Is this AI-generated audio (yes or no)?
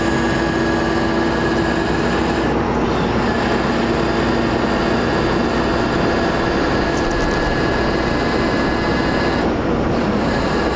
no